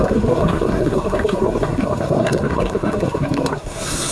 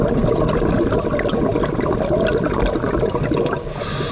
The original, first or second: second